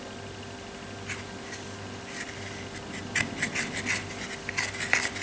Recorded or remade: recorded